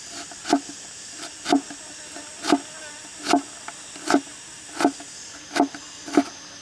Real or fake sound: real